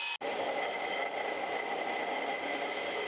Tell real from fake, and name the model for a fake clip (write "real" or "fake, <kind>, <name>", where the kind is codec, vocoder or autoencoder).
real